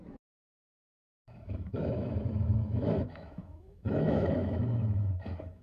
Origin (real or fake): fake